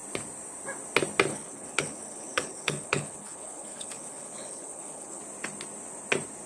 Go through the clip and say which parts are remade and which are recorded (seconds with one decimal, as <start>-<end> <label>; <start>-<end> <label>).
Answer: 0.0-1.3 recorded; 1.3-5.2 remade; 5.2-6.5 recorded